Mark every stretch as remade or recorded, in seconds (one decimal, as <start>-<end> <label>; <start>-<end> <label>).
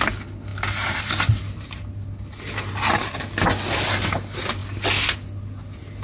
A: 0.0-6.0 recorded